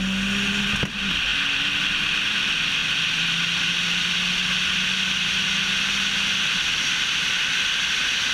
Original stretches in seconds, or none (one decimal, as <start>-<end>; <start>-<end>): 0.0-8.3